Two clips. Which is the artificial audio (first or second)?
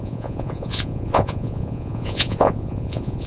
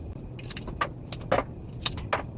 first